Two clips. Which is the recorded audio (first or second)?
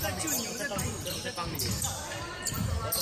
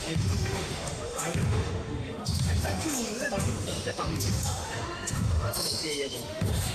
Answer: first